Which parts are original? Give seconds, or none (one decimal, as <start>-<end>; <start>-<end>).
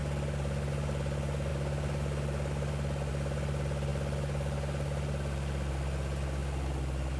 0.7-7.2